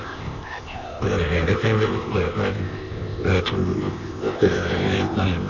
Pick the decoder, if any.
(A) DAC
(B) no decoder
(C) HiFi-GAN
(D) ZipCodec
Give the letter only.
D